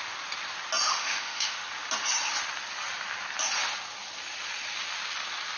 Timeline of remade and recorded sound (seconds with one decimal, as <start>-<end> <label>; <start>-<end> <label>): 0.0-0.8 recorded; 0.8-1.6 remade; 1.6-5.6 recorded